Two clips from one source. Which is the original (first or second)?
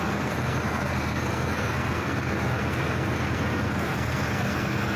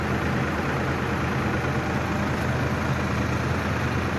second